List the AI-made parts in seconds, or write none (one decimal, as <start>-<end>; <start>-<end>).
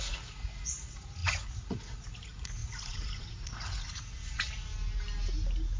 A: 0.0-4.7